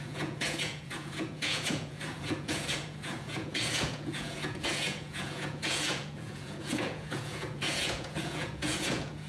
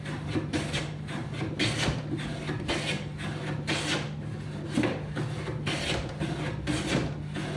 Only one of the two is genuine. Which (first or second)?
second